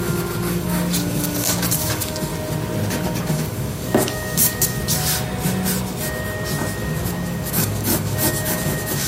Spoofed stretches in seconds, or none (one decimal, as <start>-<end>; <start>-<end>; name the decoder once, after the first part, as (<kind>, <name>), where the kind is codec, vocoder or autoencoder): 0.0-2.3 (codec, DAC); 2.9-4.8; 6.8-9.1